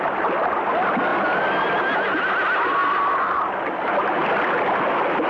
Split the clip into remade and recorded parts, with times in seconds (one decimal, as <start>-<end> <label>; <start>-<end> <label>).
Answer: 0.0-5.3 recorded